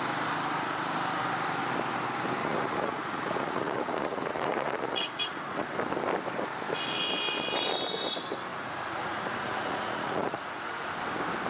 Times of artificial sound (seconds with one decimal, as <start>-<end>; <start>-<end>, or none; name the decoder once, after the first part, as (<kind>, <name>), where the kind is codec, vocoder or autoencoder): 2.4-5.7 (vocoder, Vocos); 8.5-10.9